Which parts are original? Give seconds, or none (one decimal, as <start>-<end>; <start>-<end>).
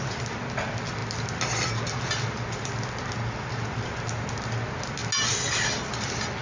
0.0-6.4